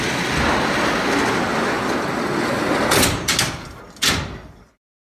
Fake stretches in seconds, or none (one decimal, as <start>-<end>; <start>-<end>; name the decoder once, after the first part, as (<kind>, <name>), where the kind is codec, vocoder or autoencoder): none